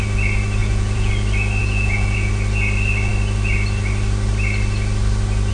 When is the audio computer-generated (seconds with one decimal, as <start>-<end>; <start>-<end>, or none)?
0.6-1.1; 1.6-2.3